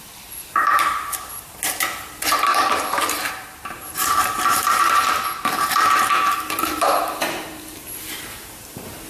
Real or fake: fake